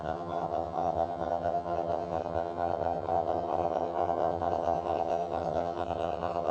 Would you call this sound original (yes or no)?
no